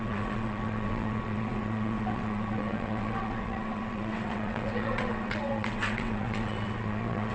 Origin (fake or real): fake